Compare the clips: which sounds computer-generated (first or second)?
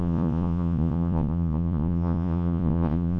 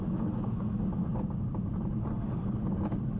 first